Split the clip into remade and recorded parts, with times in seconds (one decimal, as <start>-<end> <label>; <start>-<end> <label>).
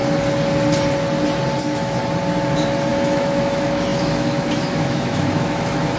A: 0.0-1.6 recorded; 1.6-2.0 remade; 2.0-2.9 recorded; 2.9-6.0 remade